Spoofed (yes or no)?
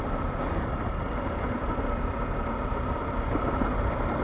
no